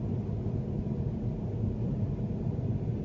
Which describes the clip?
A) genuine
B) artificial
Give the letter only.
A